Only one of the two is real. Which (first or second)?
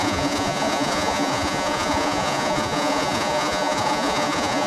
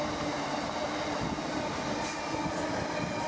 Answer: second